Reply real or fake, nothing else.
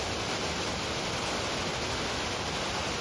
real